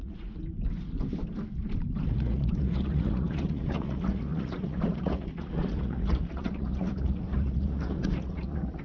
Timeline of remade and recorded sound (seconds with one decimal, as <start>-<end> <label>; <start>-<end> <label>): 0.0-0.4 remade; 0.4-2.1 recorded; 2.1-8.8 remade